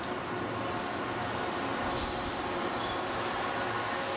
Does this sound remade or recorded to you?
recorded